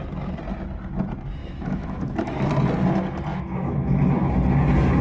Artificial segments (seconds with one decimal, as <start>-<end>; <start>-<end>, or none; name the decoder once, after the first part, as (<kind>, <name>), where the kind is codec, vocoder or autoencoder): 1.4-2.5 (autoencoder, DAC-VAE); 3.3-4.3

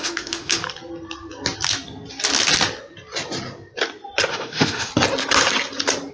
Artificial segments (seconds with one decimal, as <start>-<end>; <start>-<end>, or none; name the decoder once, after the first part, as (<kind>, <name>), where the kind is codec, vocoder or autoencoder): 0.0-0.6 (autoencoder, DAC-VAE); 4.3-4.9

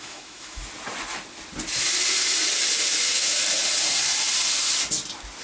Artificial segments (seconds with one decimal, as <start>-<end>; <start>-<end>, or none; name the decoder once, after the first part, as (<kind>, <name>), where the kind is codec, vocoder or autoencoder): 0.0-0.6 (autoencoder, DAC-VAE); 3.0-3.4